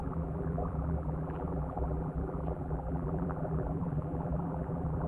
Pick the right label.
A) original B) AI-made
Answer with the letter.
B